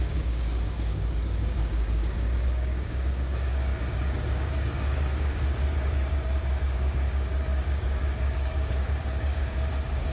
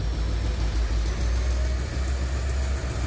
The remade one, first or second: first